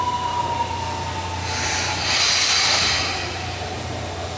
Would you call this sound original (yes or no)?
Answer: yes